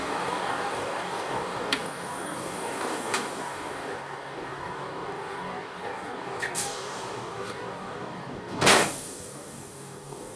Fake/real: fake